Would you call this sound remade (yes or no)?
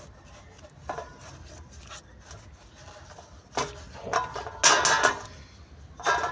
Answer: no